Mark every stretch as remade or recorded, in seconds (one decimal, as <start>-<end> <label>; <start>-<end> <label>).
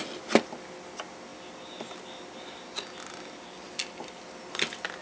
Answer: 0.0-5.0 recorded